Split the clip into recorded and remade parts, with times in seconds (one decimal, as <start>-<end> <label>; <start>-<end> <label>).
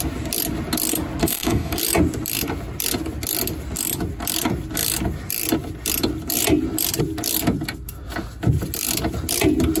0.0-1.2 recorded; 1.2-1.8 remade; 1.8-9.8 recorded